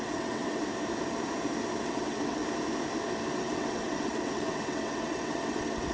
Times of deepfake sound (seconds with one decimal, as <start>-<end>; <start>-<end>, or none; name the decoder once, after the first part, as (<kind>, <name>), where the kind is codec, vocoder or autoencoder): 0.0-0.6 (vocoder, WaveNeXt); 1.8-2.4; 3.3-5.9